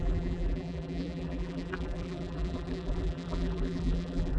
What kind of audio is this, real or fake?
fake